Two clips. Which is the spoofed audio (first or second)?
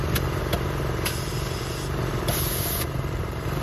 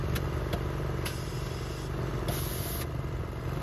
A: first